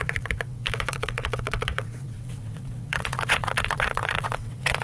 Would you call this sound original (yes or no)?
no